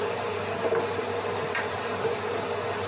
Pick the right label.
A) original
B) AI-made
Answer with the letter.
A